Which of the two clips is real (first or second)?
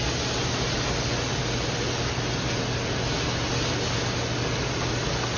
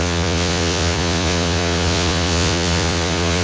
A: first